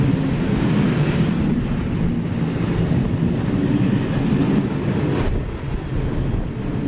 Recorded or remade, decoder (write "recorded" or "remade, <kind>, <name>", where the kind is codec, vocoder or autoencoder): recorded